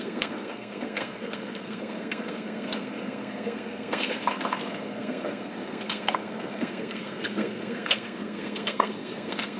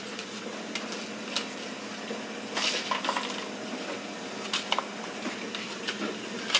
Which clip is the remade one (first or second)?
first